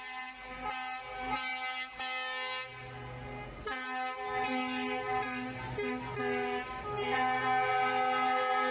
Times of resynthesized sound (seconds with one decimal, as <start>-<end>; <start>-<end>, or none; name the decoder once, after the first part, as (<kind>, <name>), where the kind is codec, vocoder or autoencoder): none